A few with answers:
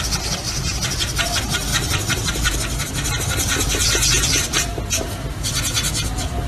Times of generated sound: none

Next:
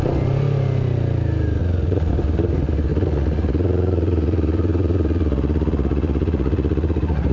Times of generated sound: 1.6-2.1 (vocoder, Vocos); 2.9-7.3

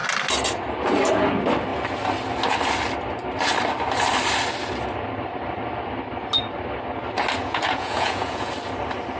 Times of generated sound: 7.4-8.5 (vocoder, Vocos)

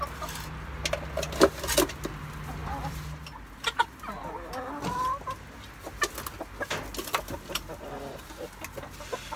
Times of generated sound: none

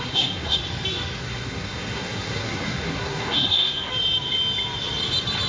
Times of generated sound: 0.0-0.6 (codec, SNAC); 1.2-3.9

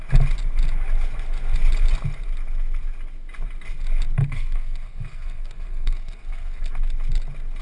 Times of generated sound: 4.2-6.6 (codec, SNAC)

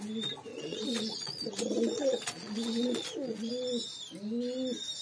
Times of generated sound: 0.5-3.5 (vocoder, Vocos)